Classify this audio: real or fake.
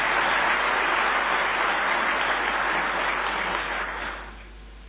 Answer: real